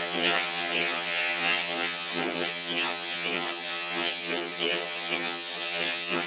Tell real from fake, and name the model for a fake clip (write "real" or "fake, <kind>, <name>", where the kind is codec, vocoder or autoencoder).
fake, vocoder, HiFi-GAN